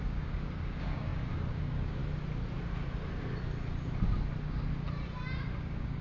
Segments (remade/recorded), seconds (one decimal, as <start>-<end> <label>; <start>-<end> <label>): 0.0-2.0 remade; 2.0-5.6 recorded; 5.6-6.0 remade